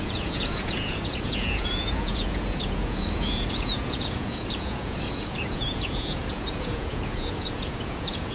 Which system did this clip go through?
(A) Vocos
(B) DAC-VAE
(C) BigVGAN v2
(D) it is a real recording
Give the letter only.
A